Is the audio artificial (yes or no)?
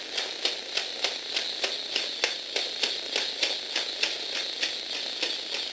no